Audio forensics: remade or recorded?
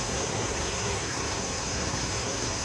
remade